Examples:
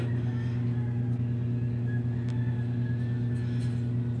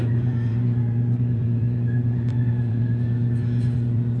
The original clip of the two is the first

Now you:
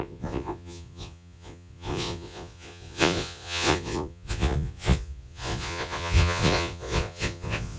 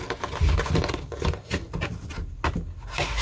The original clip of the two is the second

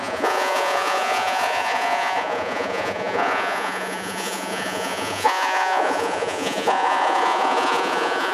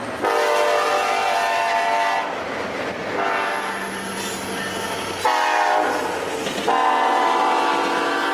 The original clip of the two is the second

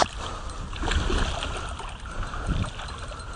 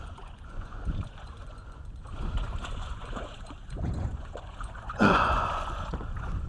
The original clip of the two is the first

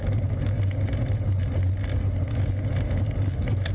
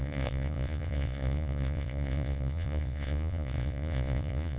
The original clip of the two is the first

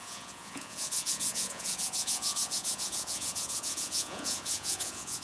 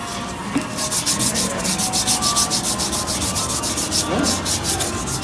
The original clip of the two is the second